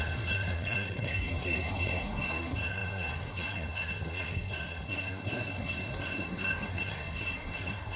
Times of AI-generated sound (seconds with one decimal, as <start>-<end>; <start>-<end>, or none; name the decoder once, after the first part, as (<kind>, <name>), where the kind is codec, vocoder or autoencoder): 0.0-8.0 (codec, SNAC)